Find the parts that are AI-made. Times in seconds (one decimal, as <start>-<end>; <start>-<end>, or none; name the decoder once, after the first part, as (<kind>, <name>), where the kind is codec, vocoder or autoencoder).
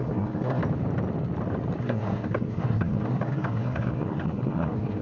0.0-0.6 (codec, SNAC); 1.8-5.0